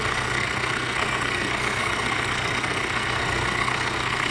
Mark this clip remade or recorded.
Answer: remade